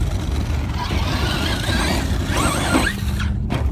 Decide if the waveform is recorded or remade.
recorded